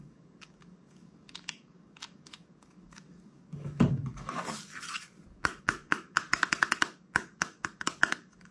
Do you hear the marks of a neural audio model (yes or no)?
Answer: yes